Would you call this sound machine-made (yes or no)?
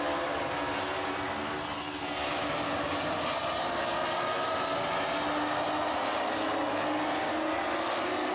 no